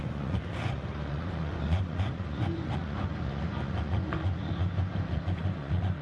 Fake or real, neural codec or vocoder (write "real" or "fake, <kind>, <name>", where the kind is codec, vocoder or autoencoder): fake, vocoder, Vocos